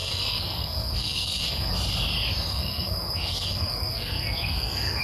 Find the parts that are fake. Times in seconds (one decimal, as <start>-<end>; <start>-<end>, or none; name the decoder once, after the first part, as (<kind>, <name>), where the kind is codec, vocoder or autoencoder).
0.0-1.7 (codec, SNAC); 2.5-5.0